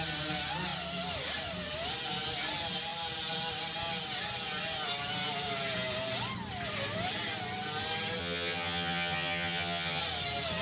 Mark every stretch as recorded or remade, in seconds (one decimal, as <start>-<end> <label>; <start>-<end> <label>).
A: 0.0-8.2 recorded; 8.2-10.0 remade; 10.0-10.6 recorded